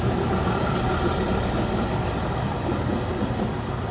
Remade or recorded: recorded